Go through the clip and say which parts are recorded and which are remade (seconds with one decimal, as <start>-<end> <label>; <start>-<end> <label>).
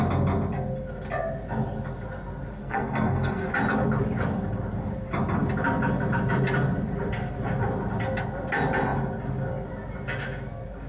0.0-2.6 recorded; 2.6-3.5 remade; 3.5-10.9 recorded